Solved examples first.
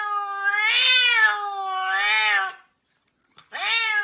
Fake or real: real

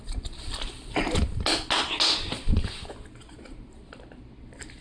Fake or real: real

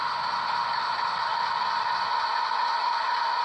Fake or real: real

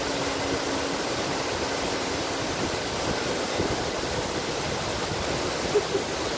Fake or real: real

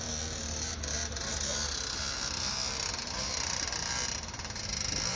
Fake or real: real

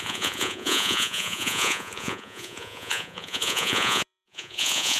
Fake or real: fake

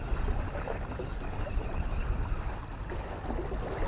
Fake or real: real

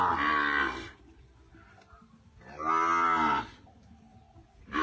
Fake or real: real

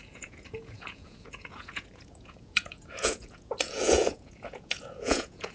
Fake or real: fake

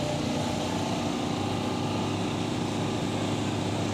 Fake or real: real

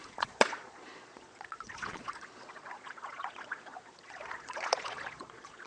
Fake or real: fake